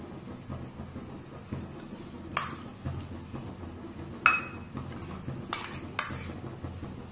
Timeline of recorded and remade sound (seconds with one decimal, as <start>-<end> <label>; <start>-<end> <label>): 0.0-7.1 recorded